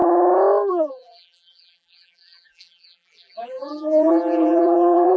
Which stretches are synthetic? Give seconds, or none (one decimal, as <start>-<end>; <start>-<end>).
0.7-5.2